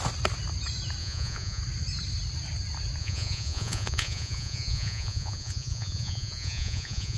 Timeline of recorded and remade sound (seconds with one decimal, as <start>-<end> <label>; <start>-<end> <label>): 0.0-1.0 recorded; 1.0-1.6 remade; 1.6-3.0 recorded; 3.0-7.2 remade